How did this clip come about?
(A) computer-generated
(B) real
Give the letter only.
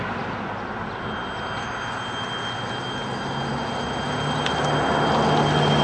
B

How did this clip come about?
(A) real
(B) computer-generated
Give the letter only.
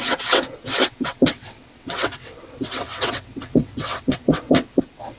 B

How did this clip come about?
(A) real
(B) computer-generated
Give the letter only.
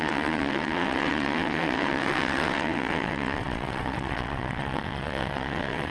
B